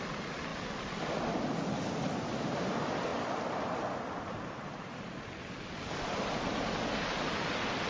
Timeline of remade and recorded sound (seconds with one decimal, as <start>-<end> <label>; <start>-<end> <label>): 0.0-7.9 recorded